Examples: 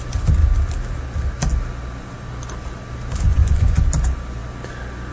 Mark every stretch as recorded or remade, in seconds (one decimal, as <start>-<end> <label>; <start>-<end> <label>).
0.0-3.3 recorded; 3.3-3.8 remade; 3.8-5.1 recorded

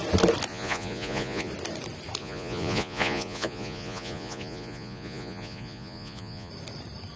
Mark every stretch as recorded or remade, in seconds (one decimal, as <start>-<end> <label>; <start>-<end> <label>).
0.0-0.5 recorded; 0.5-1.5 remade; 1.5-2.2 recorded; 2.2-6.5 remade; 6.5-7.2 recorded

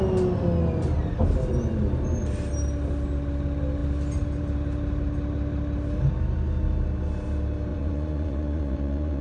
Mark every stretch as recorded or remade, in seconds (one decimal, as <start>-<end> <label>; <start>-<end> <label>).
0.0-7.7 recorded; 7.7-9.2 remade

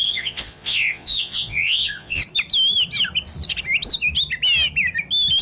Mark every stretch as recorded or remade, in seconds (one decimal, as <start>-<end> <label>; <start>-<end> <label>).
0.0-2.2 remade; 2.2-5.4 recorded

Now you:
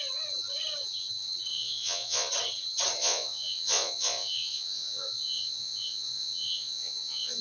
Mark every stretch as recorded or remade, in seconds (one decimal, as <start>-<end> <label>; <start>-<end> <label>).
0.0-1.5 recorded; 1.5-2.3 remade; 2.3-3.0 recorded; 3.0-7.4 remade

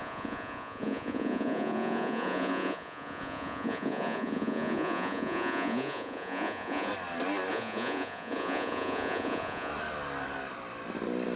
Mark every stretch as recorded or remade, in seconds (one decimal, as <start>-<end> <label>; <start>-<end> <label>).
0.0-6.9 remade; 6.9-7.5 recorded; 7.5-9.7 remade; 9.7-11.4 recorded

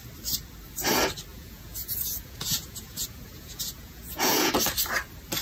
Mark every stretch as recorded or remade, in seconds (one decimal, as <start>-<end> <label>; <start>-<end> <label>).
0.0-1.3 recorded; 1.3-4.5 remade; 4.5-5.4 recorded

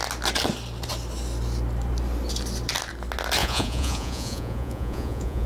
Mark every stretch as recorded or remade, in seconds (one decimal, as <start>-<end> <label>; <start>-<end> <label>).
0.0-3.4 recorded; 3.4-5.5 remade